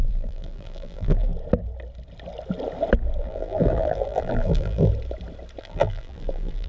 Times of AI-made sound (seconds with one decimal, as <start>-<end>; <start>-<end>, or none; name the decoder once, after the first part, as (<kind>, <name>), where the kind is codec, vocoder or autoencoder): 0.0-1.3 (vocoder, BigVGAN v2); 3.2-4.9; 5.6-6.7